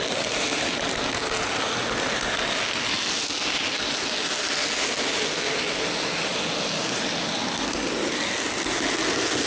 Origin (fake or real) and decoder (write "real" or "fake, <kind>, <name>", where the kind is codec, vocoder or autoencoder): real